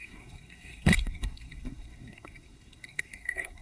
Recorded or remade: remade